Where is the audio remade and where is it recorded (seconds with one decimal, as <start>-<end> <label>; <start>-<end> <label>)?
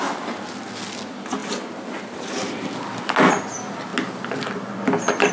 0.0-5.3 recorded